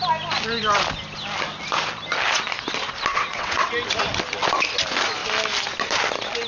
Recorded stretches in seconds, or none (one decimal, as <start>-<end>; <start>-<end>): 0.0-3.1; 3.7-6.5